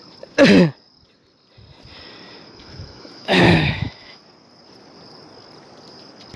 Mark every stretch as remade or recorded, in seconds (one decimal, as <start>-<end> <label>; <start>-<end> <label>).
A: 0.0-2.6 recorded; 2.6-4.2 remade; 4.2-6.4 recorded